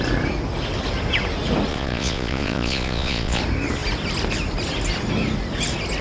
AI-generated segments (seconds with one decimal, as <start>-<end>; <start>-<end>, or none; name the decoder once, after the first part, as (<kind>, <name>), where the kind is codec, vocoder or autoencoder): 1.7-3.4 (vocoder, Vocos)